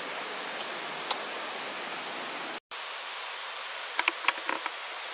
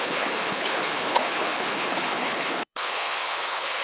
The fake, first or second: second